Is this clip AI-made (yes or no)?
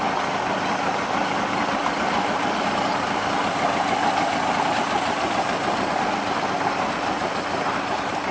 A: no